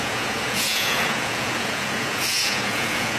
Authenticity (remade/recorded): remade